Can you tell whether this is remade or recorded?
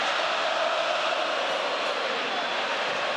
recorded